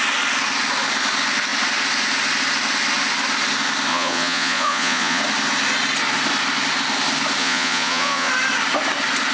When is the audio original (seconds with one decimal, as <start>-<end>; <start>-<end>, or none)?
0.0-3.9; 5.2-7.4; 8.3-9.3